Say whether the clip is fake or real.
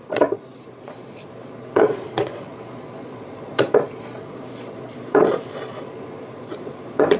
fake